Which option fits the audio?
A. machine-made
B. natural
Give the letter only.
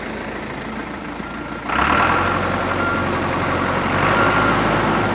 B